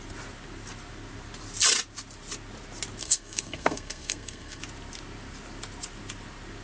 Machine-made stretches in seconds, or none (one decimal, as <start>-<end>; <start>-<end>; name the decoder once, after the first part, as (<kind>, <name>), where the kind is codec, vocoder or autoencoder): 3.0-4.6 (codec, SNAC)